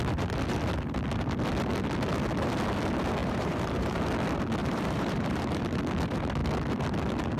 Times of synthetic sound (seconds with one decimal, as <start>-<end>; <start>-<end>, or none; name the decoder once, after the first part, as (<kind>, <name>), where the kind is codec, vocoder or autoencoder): 3.2-4.0 (vocoder, BigVGAN v2); 4.6-5.6